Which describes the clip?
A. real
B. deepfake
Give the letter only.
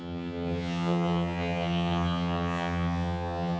B